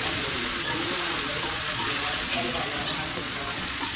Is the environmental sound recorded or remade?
remade